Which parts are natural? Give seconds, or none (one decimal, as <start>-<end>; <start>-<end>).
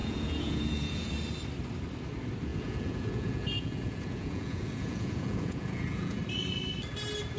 1.1-2.5; 6.2-7.4